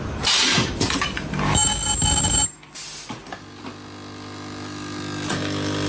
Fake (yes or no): no